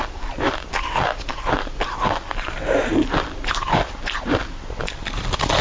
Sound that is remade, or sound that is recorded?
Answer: recorded